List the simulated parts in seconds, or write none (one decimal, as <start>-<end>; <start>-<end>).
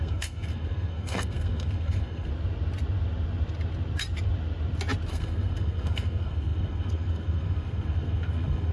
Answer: 0.0-2.3; 5.1-8.7